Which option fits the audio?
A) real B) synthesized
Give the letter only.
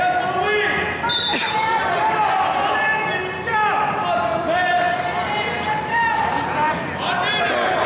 A